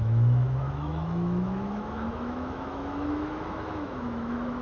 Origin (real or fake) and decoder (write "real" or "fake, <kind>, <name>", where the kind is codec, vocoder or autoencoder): fake, autoencoder, DAC-VAE